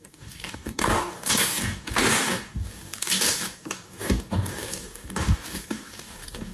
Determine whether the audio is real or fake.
fake